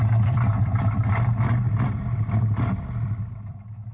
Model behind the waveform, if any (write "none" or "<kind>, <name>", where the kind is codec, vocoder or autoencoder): vocoder, BigVGAN v2